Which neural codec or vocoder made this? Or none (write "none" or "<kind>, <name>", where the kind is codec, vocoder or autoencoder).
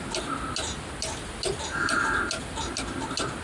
none